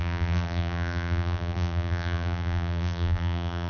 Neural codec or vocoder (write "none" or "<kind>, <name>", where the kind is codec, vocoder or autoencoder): vocoder, BigVGAN v2